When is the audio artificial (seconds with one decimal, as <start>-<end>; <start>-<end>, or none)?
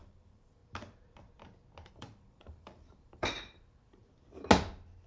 0.0-0.6; 1.9-4.0